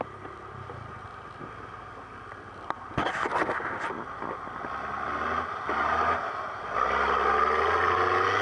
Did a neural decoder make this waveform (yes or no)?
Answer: no